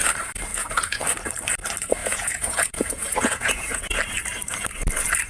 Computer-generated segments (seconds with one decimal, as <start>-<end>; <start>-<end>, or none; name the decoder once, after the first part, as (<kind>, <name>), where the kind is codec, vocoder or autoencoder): 0.5-1.0 (vocoder, Vocos); 2.0-4.0